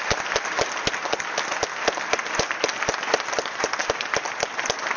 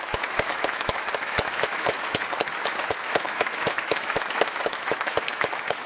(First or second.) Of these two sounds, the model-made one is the second